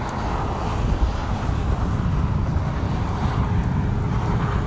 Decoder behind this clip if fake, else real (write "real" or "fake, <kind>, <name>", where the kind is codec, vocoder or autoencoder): real